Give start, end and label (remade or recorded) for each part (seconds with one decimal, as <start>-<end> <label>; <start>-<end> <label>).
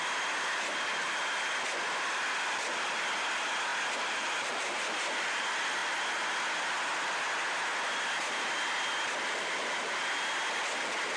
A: 0.0-3.7 remade; 3.7-4.2 recorded; 4.2-5.8 remade; 5.8-8.3 recorded; 8.3-11.2 remade